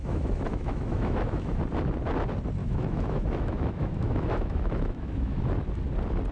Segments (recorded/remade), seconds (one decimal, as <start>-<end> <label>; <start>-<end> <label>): 0.0-1.6 remade; 1.6-2.6 recorded; 2.6-5.4 remade; 5.4-6.3 recorded